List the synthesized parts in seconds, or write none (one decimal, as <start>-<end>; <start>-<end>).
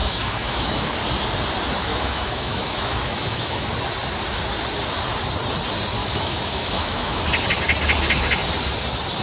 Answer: 0.0-0.9; 1.9-3.7; 6.0-7.2